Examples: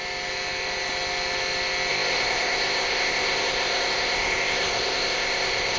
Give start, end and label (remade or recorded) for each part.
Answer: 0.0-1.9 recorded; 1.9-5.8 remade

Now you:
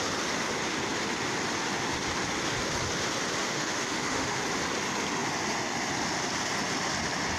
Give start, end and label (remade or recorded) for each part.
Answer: 0.0-3.4 recorded; 3.4-4.4 remade; 4.4-7.4 recorded

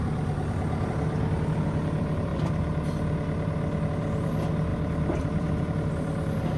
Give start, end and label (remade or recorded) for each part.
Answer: 0.0-4.7 recorded; 4.7-5.9 remade; 5.9-6.6 recorded

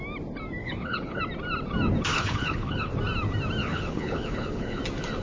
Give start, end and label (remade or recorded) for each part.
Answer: 0.0-0.6 recorded; 0.6-1.2 remade; 1.2-2.1 recorded; 2.1-2.9 remade; 2.9-3.6 recorded; 3.6-4.8 remade; 4.8-5.2 recorded

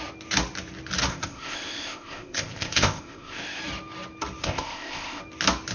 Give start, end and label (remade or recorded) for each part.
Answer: 0.0-1.1 recorded; 1.1-3.6 remade; 3.6-4.4 recorded; 4.4-5.2 remade; 5.2-5.7 recorded

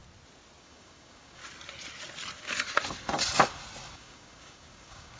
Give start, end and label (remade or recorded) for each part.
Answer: 0.0-0.6 recorded; 0.6-1.4 remade; 1.4-3.9 recorded; 3.9-5.2 remade

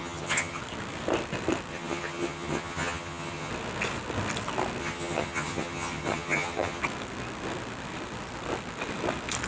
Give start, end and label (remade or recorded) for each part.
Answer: 0.0-0.6 remade; 0.6-1.7 recorded; 1.7-3.5 remade; 3.5-4.8 recorded; 4.8-6.8 remade; 6.8-9.5 recorded